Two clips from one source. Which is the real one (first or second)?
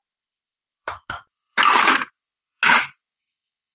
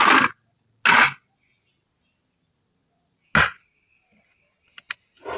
second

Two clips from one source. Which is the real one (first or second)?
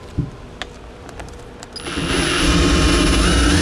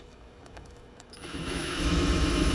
first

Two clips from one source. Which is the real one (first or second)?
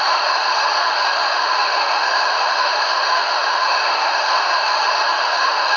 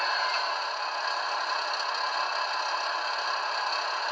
second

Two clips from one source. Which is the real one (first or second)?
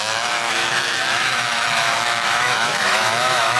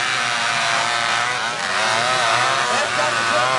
second